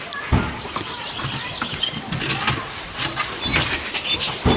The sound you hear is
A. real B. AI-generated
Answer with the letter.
A